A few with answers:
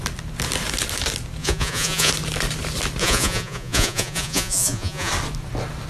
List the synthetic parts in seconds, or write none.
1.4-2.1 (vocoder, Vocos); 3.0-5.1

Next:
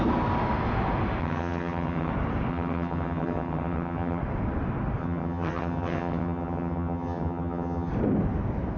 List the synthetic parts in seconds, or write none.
1.2-2.1 (vocoder, HiFi-GAN); 2.5-4.2; 5.0-7.9